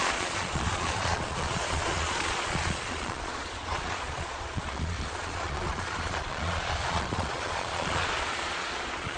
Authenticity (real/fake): fake